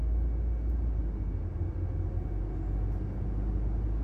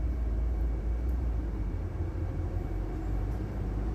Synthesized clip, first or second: second